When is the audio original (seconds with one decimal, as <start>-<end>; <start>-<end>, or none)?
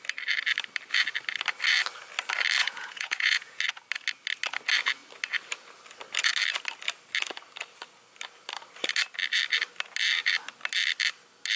0.0-2.6; 3.6-11.6